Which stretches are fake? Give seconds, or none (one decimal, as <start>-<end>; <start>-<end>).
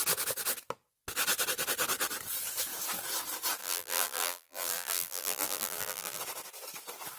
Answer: 3.6-6.2